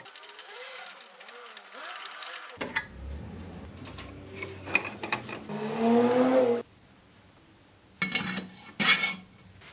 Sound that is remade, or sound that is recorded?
recorded